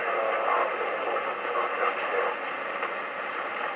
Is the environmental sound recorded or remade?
recorded